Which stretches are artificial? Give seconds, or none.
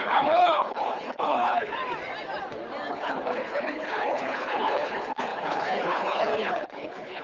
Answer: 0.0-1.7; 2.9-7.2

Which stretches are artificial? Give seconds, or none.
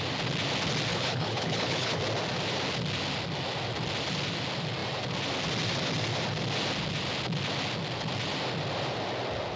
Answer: 0.9-2.0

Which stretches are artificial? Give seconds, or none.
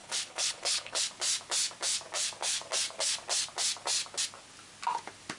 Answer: 0.0-1.0